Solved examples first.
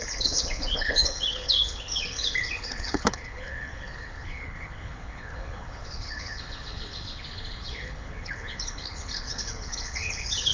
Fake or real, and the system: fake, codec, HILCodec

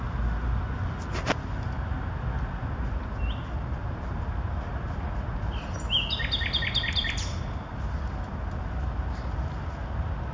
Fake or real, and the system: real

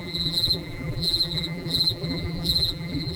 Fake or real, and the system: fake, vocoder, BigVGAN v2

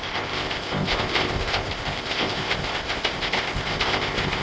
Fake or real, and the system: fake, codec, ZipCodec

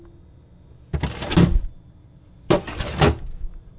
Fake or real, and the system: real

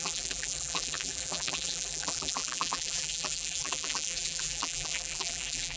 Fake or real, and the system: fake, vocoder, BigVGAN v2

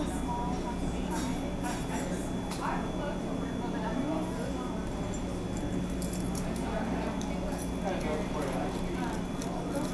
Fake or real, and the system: real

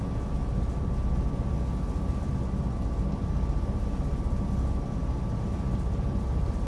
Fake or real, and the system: real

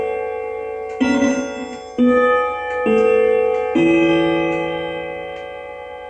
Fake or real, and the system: real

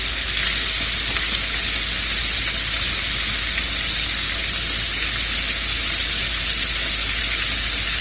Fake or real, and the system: real